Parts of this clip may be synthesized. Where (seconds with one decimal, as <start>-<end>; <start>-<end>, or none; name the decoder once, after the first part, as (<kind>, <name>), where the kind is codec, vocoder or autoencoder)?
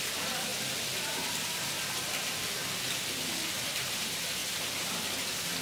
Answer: 0.5-3.9 (vocoder, BigVGAN v2); 4.4-5.0